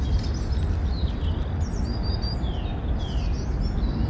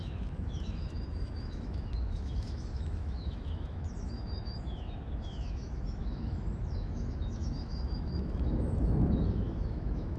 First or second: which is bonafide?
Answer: first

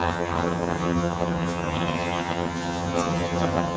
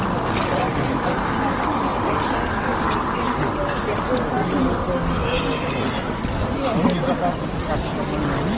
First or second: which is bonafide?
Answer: second